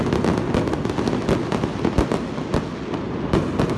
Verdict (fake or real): real